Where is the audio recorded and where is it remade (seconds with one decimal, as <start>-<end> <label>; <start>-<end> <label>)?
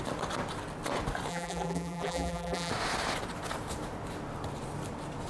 0.0-1.3 recorded; 1.3-2.7 remade; 2.7-5.3 recorded